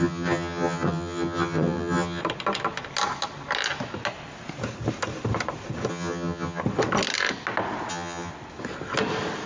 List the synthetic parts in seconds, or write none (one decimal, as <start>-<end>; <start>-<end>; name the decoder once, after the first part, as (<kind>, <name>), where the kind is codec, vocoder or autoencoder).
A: 0.0-2.2 (vocoder, HiFi-GAN); 5.9-6.6; 7.9-8.3